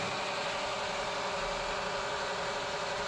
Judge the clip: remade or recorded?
recorded